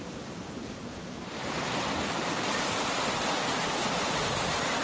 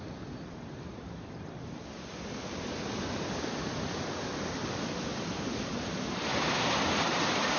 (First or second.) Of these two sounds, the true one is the first